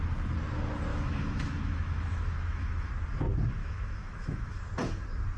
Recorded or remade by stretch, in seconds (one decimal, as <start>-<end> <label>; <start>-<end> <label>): 0.0-0.9 recorded; 0.9-2.9 remade; 2.9-3.6 recorded; 3.6-4.6 remade; 4.6-5.4 recorded